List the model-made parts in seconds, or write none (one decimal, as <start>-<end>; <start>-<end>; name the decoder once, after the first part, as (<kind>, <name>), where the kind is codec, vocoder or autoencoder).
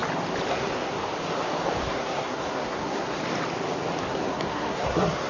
0.5-1.0 (codec, SNAC); 1.8-3.2; 4.0-5.3